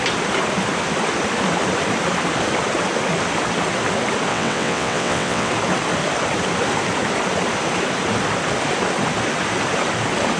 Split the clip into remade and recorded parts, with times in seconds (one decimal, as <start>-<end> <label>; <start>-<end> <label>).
0.0-4.3 recorded; 4.3-5.5 remade; 5.5-10.4 recorded